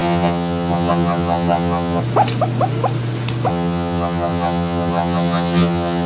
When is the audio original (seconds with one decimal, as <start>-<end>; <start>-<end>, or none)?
2.0-3.5